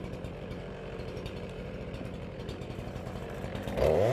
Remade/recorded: remade